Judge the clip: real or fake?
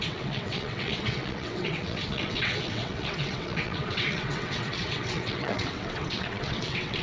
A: fake